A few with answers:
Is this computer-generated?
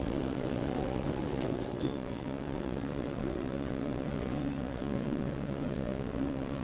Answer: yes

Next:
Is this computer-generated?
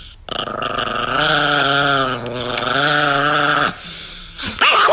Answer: no